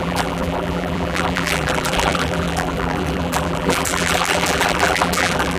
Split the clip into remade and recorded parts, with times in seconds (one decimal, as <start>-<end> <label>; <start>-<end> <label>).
0.0-5.6 remade